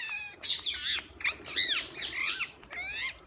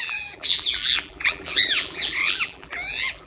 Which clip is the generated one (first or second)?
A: second